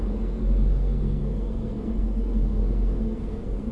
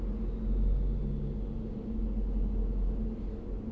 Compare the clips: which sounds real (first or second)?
second